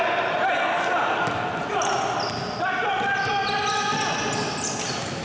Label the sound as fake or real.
real